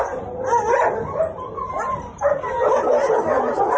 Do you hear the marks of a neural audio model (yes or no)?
no